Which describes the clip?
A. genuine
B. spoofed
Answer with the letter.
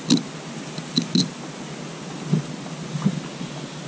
A